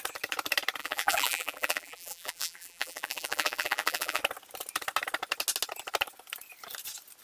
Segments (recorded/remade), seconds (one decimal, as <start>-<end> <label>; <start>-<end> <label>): 0.0-0.8 recorded; 0.8-4.2 remade; 4.2-7.2 recorded